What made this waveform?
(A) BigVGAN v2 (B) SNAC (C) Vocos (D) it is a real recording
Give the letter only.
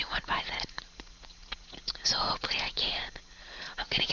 C